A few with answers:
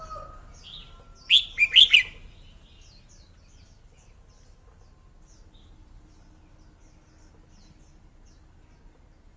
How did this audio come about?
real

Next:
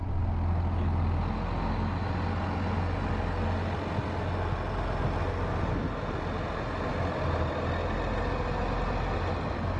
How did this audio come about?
real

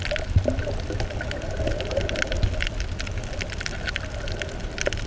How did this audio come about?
real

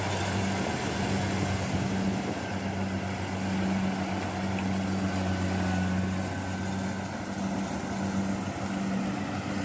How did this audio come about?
real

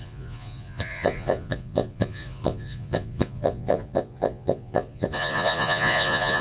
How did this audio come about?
fake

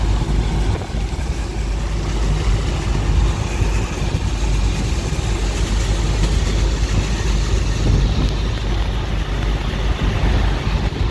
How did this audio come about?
real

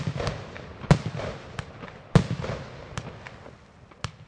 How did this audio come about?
real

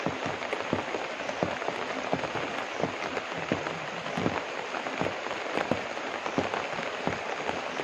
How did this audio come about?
real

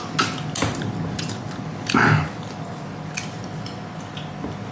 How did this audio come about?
real